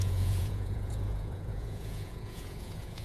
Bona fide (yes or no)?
no